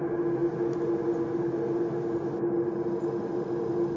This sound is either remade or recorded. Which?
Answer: recorded